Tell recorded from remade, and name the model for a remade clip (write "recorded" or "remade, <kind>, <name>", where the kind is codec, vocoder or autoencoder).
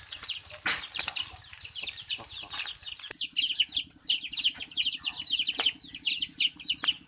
recorded